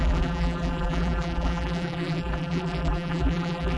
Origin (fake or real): fake